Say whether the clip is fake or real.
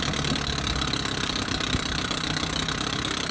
real